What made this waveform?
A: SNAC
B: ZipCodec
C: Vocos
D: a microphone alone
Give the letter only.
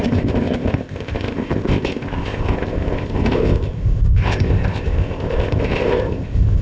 B